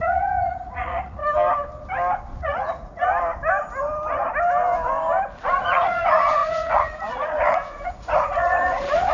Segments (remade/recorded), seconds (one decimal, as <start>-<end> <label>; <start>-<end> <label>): 0.0-1.2 remade; 1.2-2.4 recorded; 2.4-3.1 remade; 3.1-5.4 recorded; 5.4-9.1 remade